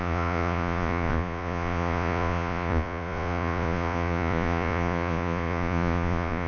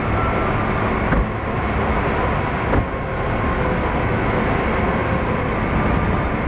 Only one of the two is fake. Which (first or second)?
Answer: first